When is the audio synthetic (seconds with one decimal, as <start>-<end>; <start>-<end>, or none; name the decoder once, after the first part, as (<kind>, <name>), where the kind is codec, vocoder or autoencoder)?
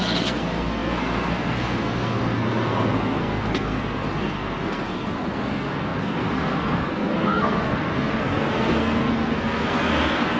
0.0-10.4 (codec, SNAC)